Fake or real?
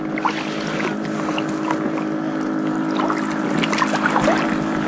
fake